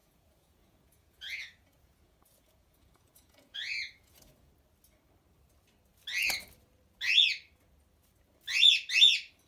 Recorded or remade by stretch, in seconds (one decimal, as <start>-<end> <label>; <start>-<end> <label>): 0.0-4.5 remade; 4.5-9.5 recorded